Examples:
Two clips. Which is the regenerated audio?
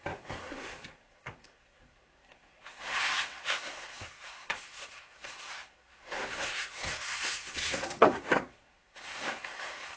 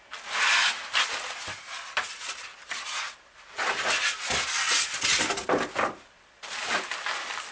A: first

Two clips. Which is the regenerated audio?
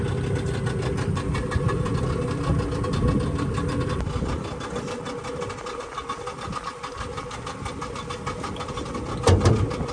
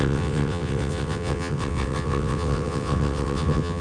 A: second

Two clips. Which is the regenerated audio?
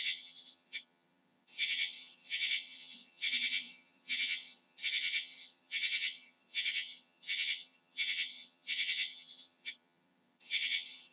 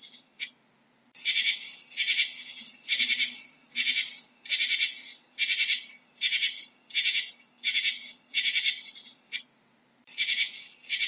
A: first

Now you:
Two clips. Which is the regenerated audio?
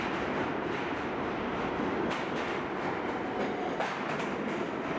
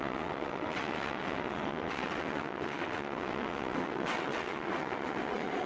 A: second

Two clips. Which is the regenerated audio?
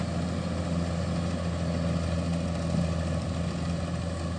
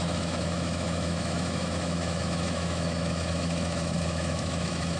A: second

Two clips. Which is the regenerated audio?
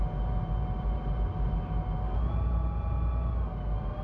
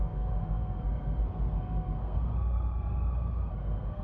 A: second